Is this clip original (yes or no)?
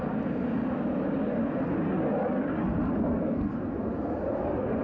yes